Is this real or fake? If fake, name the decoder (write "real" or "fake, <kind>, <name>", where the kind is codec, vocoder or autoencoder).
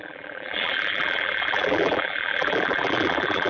fake, vocoder, BigVGAN v2